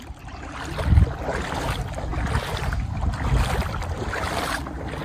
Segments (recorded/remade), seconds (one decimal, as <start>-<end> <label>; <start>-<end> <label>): 0.0-5.0 recorded